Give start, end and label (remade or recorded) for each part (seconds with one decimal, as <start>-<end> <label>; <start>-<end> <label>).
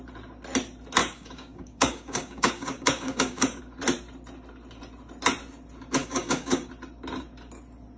0.0-1.0 recorded; 1.0-3.6 remade; 3.6-6.0 recorded; 6.0-6.7 remade; 6.7-8.0 recorded